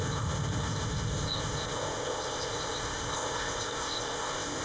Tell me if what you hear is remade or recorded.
remade